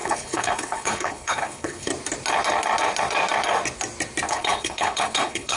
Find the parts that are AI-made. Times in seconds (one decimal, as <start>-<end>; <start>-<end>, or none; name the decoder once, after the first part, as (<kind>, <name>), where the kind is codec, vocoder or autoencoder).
0.0-1.9 (codec, HILCodec); 4.3-5.6